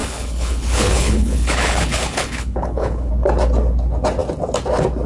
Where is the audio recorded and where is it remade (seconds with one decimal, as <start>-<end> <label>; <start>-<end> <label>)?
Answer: 0.0-3.1 remade; 3.1-5.1 recorded